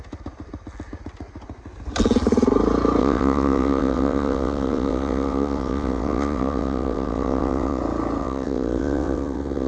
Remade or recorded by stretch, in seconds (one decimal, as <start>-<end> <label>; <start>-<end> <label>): 0.0-3.0 recorded; 3.0-7.8 remade; 7.8-8.2 recorded; 8.2-9.7 remade